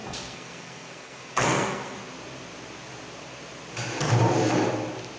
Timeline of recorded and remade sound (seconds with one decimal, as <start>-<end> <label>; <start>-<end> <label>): 0.0-2.0 remade; 2.0-5.2 recorded